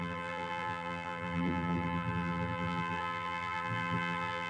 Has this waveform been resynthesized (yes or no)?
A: yes